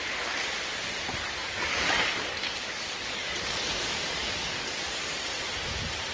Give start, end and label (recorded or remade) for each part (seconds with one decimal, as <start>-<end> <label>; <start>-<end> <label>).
0.0-1.4 recorded; 1.4-5.1 remade; 5.1-6.1 recorded